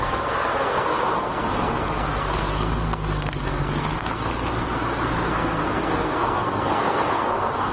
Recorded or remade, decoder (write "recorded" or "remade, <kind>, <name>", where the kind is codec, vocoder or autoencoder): remade, codec, SNAC